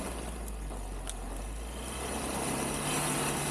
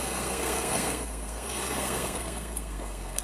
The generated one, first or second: second